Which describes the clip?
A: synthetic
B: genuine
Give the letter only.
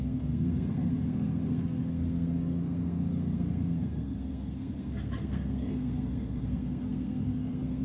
A